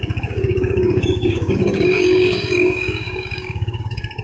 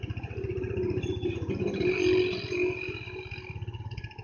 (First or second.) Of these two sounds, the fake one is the first